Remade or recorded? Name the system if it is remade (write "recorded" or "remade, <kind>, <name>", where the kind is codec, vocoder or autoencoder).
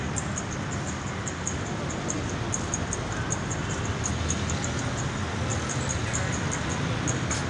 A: recorded